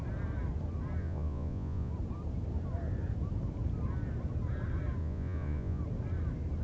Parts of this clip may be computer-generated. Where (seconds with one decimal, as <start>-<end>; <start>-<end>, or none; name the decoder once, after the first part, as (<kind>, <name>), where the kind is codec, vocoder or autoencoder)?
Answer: 1.0-1.9 (vocoder, Vocos); 5.0-5.8